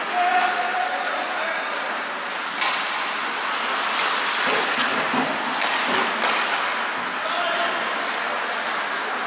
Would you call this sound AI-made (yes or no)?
no